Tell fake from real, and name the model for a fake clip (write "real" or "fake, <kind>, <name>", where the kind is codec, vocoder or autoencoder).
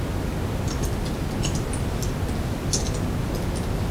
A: real